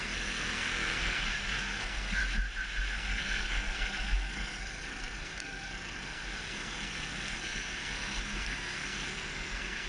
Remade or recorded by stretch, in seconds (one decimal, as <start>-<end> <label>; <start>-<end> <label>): 0.0-2.2 remade; 2.2-2.9 recorded; 2.9-9.9 remade